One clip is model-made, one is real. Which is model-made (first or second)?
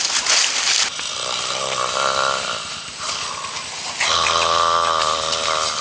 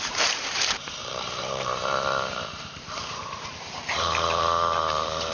second